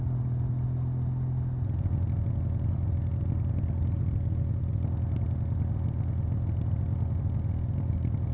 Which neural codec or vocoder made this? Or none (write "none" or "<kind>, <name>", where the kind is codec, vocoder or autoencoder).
none